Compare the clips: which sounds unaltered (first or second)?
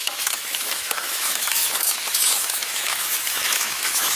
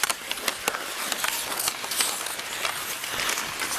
second